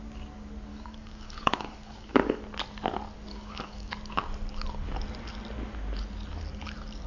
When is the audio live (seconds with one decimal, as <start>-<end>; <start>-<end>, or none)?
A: 0.0-0.7; 2.4-3.3; 3.9-7.1

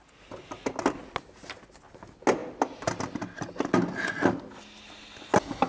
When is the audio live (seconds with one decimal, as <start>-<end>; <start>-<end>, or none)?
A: 0.0-5.7

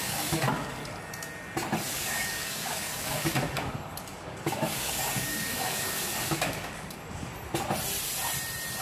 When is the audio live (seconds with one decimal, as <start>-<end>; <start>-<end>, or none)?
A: 0.8-1.9; 7.3-8.8

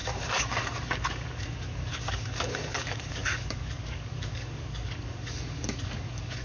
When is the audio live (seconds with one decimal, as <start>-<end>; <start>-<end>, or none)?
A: none

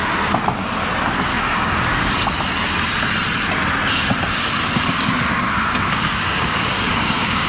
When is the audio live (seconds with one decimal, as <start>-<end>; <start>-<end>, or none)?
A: 0.0-1.3; 2.1-5.3

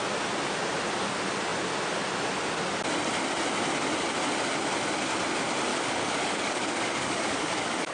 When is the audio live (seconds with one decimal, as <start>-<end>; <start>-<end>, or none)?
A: 0.0-5.7